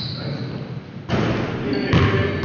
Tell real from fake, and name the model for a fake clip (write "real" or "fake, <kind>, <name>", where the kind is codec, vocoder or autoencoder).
real